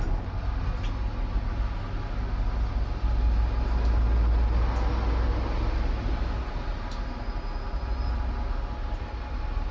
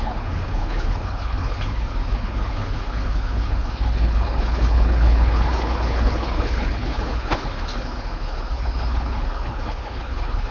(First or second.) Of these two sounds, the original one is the first